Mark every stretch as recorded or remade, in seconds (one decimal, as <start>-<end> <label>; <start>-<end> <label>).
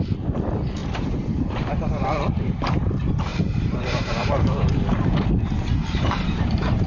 0.0-0.8 recorded; 0.8-2.2 remade; 2.2-3.3 recorded; 3.3-6.9 remade